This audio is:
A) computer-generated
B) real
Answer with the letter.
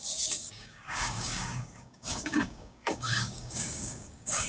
A